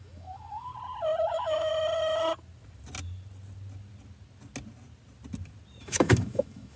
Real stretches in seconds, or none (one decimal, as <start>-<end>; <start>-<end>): 0.7-1.2; 1.7-5.8